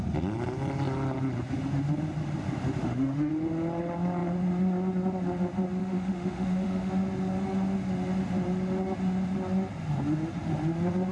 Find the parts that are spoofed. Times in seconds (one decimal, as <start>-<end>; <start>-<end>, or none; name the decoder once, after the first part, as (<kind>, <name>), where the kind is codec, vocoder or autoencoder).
2.8-3.3 (autoencoder, DAC-VAE); 5.8-6.9